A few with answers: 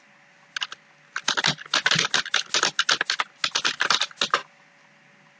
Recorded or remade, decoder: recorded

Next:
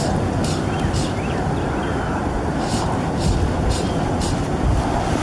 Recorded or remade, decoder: recorded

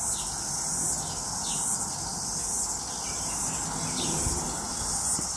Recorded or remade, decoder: recorded